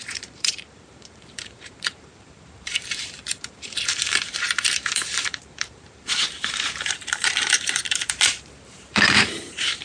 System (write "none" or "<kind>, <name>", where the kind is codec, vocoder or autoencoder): vocoder, BigVGAN v2